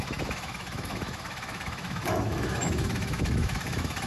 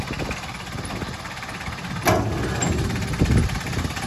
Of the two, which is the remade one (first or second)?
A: first